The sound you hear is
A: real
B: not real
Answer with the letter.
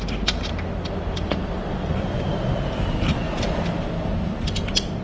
A